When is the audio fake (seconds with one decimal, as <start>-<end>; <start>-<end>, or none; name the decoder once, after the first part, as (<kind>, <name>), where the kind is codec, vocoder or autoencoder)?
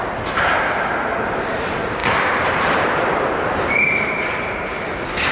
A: 0.0-5.3 (vocoder, BigVGAN v2)